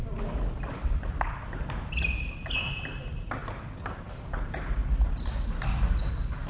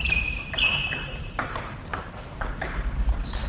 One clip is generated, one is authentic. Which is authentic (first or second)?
first